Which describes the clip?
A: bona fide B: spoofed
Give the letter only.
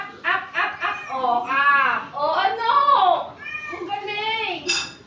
A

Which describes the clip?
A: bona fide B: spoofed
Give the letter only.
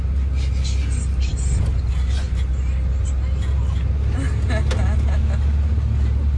A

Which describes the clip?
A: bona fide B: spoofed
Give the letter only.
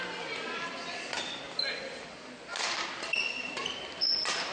A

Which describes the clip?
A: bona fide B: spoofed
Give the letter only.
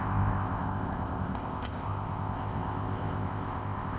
B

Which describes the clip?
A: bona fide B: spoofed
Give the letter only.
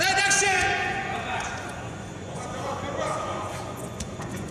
B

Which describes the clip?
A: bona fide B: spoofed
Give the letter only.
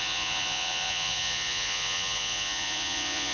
B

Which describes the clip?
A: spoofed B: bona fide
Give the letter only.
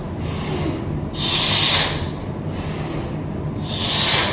B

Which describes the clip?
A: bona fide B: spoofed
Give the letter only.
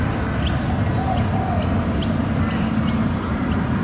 A